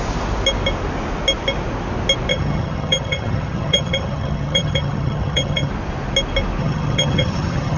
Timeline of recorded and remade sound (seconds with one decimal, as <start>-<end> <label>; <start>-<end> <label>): 0.0-2.3 recorded; 2.3-5.7 remade; 5.7-6.6 recorded; 6.6-7.8 remade